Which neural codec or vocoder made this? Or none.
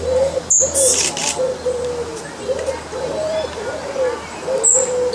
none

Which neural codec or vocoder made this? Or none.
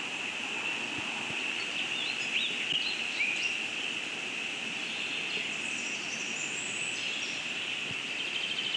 none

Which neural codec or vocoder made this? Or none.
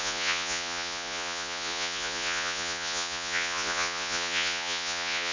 vocoder, Vocos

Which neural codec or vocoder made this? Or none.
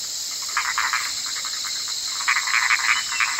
none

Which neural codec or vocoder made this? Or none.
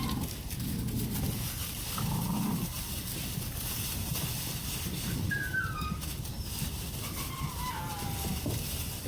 none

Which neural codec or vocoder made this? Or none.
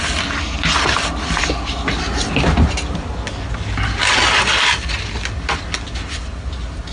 none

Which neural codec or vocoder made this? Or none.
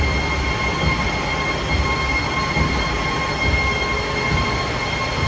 none